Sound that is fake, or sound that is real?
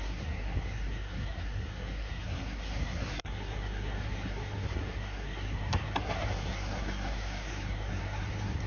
fake